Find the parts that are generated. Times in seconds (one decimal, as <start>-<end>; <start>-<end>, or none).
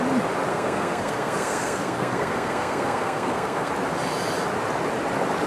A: 0.5-3.7